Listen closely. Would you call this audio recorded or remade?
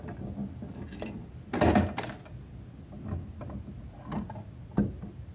recorded